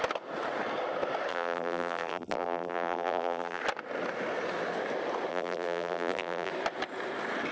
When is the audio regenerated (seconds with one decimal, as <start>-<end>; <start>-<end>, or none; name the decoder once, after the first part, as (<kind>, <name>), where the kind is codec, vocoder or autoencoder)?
1.3-3.6 (vocoder, BigVGAN v2); 5.3-6.5